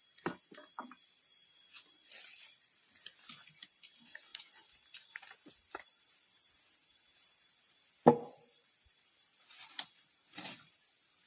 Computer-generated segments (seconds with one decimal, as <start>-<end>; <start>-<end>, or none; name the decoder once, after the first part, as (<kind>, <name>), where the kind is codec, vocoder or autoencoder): none